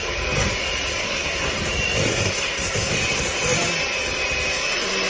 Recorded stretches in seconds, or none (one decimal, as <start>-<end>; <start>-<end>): 0.0-1.0; 1.5-2.1; 2.9-5.1